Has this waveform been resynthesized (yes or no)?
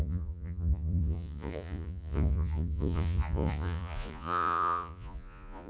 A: yes